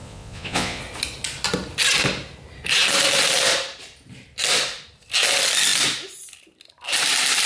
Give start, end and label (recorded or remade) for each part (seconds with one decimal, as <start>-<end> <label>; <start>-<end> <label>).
0.0-0.8 remade; 0.8-7.5 recorded